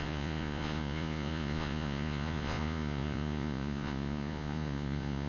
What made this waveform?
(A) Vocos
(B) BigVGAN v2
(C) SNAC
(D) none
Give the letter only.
A